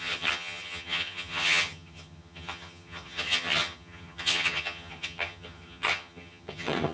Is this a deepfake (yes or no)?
yes